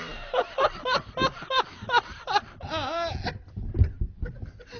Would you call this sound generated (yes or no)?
no